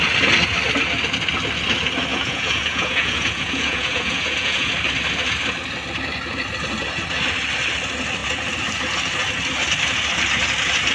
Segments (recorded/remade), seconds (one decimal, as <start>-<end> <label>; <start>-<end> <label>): 0.0-2.1 recorded; 2.1-4.7 remade; 4.7-10.9 recorded